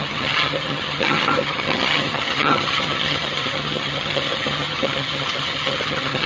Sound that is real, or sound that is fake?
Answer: fake